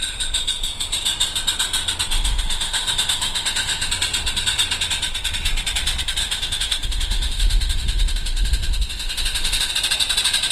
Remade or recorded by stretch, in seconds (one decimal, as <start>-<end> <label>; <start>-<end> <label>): 0.0-2.1 recorded; 2.1-3.9 remade; 3.9-6.2 recorded; 6.2-9.7 remade; 9.7-10.5 recorded